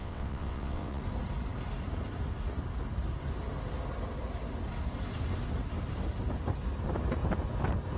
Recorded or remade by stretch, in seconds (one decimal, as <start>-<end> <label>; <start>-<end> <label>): 0.0-1.0 remade; 1.0-8.0 recorded